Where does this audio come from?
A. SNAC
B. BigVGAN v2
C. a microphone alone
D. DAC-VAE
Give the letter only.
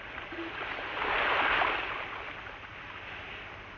C